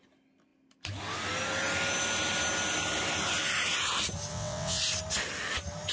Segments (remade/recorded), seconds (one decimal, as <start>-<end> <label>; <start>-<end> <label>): 0.0-4.3 recorded; 4.3-4.8 remade; 4.8-5.9 recorded